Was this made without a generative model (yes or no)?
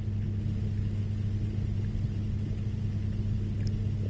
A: yes